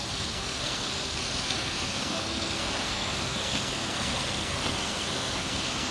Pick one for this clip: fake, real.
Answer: fake